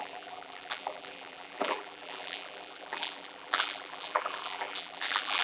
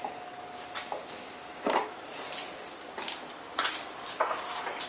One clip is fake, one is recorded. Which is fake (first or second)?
first